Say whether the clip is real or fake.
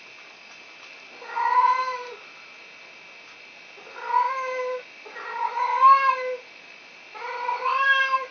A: real